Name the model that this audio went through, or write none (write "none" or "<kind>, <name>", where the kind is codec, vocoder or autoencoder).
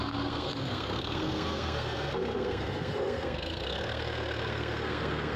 codec, SNAC